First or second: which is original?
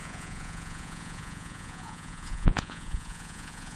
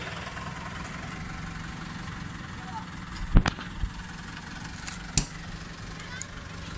second